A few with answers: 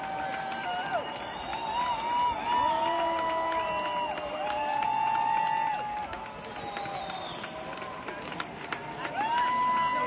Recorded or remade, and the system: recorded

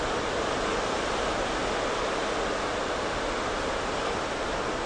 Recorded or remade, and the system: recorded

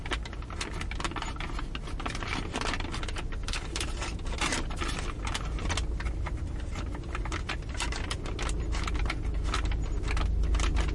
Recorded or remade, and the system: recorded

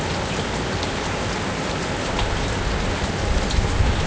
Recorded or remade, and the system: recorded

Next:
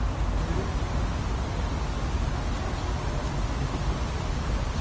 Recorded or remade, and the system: recorded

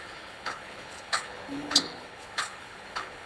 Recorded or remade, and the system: remade, codec, HILCodec